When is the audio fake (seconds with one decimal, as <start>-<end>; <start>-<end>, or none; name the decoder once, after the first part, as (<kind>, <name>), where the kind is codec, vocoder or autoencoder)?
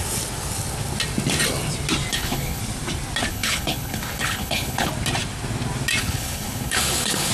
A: 2.1-2.6 (codec, HILCodec); 3.3-4.9; 6.0-7.3